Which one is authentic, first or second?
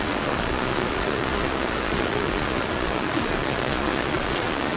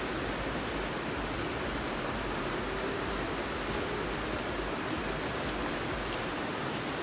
second